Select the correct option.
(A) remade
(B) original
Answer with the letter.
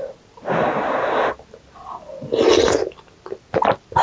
B